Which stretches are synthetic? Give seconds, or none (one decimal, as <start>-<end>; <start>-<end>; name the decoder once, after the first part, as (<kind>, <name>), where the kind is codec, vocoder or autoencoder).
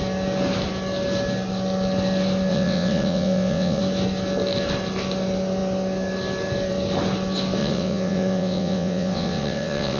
2.5-3.8 (vocoder, WaveNeXt); 7.6-10.0